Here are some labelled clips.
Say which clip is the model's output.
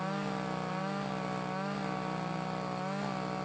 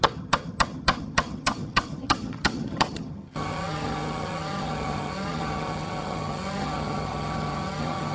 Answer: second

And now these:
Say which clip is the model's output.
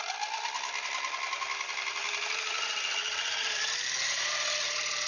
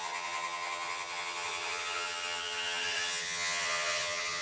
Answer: second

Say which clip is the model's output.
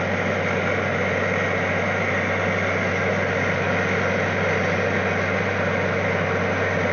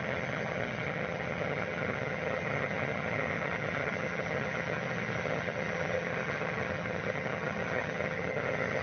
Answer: second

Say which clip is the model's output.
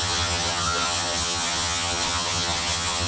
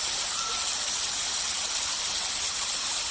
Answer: first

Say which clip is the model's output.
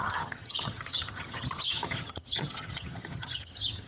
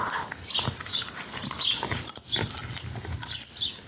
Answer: first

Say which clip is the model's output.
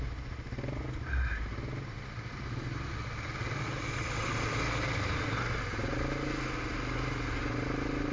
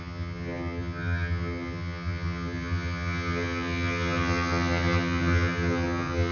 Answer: second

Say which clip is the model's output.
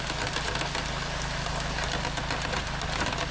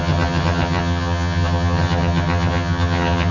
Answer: second